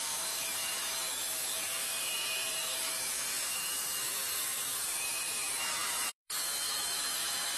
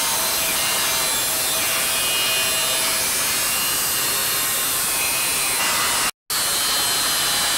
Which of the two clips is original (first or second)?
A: second